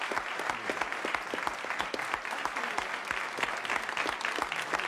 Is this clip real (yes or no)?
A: yes